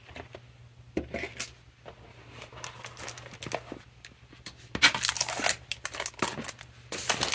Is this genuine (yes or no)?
yes